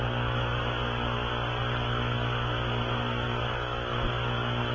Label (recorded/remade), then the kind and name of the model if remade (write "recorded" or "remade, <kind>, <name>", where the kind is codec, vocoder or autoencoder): recorded